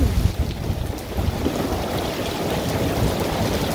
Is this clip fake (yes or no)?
no